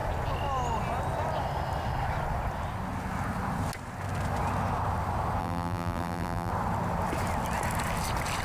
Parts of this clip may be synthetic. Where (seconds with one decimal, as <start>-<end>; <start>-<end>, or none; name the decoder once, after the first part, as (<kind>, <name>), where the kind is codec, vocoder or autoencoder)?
5.4-6.5 (vocoder, BigVGAN v2)